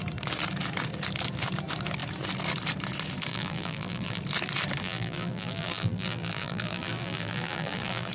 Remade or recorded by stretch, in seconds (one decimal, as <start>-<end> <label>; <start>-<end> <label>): 0.0-3.3 recorded; 3.3-4.2 remade; 4.2-4.8 recorded; 4.8-8.1 remade